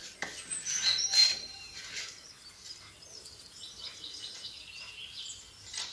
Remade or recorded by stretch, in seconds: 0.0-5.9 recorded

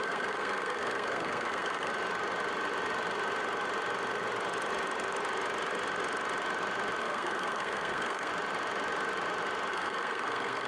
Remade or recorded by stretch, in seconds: 0.0-1.9 remade; 1.9-7.0 recorded; 7.0-8.3 remade; 8.3-9.7 recorded; 9.7-10.7 remade

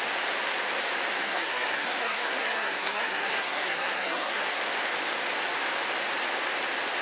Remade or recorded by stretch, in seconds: 0.0-1.2 recorded; 1.2-4.6 remade; 4.6-7.0 recorded

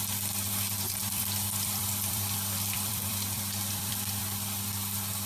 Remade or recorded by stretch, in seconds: 0.0-1.0 recorded; 1.0-4.2 remade; 4.2-5.3 recorded

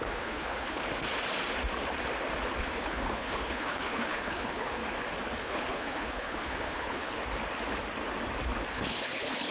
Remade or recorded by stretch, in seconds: 0.0-0.8 remade; 0.8-2.6 recorded; 2.6-4.8 remade; 4.8-5.4 recorded; 5.4-7.2 remade; 7.2-8.7 recorded; 8.7-9.5 remade

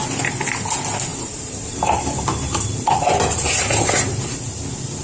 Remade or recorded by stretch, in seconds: 0.0-1.1 recorded; 1.1-4.1 remade; 4.1-5.0 recorded